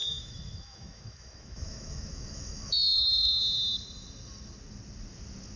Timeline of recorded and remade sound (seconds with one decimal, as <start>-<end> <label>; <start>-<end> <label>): 0.0-3.4 remade; 3.4-5.6 recorded